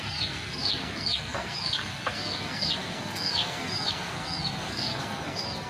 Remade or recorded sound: remade